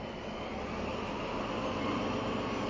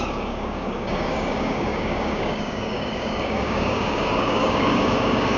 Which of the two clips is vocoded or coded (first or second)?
second